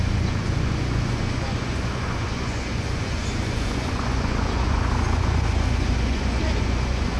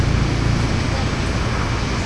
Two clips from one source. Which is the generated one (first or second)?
first